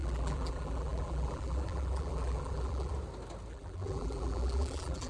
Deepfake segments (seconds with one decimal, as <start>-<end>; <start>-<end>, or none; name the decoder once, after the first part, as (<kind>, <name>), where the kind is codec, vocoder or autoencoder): 0.0-2.9 (vocoder, BigVGAN v2); 3.5-5.1